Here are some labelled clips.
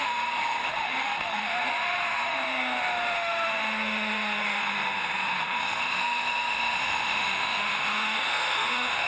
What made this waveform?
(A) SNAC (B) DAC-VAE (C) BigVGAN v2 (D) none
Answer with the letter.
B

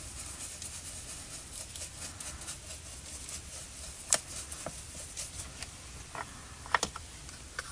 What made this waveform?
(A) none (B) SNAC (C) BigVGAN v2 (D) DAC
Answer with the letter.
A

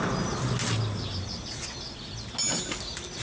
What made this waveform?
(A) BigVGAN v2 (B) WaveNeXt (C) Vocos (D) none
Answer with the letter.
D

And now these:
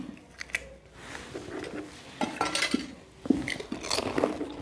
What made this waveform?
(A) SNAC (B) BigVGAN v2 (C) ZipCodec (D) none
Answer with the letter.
D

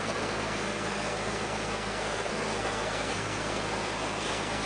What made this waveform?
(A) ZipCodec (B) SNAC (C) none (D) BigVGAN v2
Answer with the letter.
B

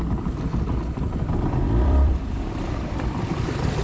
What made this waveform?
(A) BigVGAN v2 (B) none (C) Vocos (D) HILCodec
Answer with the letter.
A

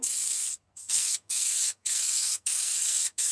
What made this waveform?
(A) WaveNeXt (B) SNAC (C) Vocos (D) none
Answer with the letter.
B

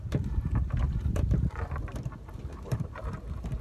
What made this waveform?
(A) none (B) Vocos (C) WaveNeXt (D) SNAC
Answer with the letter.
A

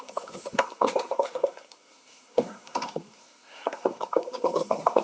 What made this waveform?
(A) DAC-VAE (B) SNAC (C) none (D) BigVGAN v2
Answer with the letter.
B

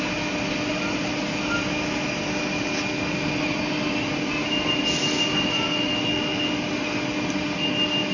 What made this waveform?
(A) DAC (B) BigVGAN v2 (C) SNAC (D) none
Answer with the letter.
D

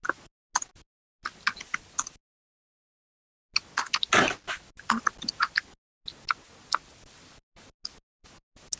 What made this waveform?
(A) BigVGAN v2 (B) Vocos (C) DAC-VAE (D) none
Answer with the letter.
D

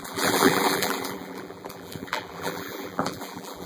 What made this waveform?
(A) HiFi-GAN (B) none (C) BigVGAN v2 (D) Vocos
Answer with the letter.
C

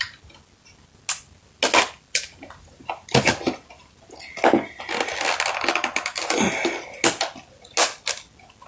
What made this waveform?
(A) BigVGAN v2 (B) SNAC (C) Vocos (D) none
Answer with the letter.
D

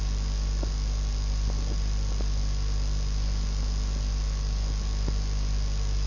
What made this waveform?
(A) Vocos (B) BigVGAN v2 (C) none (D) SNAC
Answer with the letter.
C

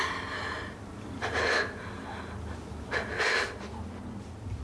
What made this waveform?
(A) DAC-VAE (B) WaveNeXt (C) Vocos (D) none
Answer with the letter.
D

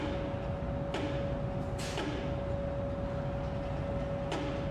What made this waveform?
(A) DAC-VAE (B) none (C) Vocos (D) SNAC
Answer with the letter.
B